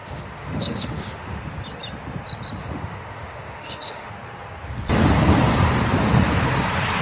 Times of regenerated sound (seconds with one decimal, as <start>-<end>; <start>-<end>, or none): 0.0-1.4; 2.6-4.1